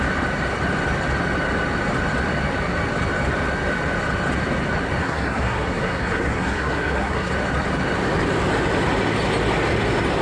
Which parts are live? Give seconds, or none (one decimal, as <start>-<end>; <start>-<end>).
0.0-5.0; 7.3-10.2

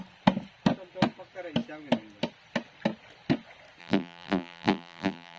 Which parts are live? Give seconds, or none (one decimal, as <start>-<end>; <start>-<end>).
0.0-3.8

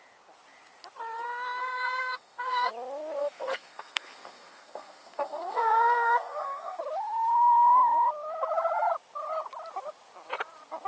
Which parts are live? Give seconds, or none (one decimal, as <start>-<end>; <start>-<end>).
0.0-1.6; 2.7-3.2; 6.8-10.9

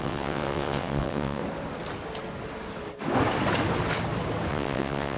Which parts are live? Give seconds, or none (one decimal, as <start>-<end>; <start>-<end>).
1.4-4.5

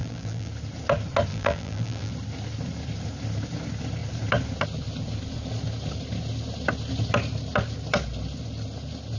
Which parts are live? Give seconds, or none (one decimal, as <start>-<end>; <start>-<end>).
0.5-1.3; 2.1-9.2

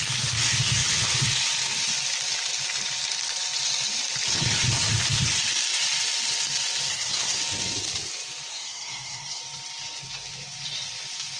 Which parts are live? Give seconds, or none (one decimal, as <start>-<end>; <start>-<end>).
0.0-6.9; 7.4-8.5; 9.4-11.4